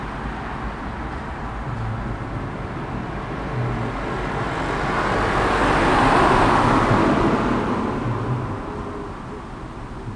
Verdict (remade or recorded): recorded